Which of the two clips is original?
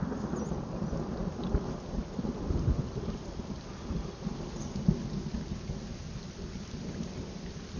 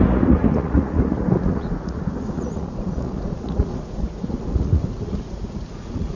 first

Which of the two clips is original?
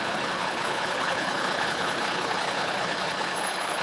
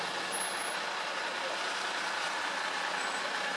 second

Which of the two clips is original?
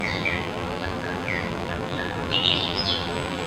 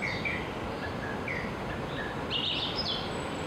second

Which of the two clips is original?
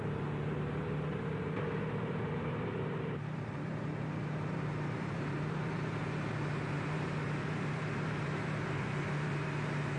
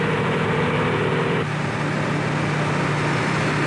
second